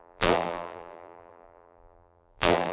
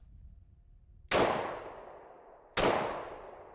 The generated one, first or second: first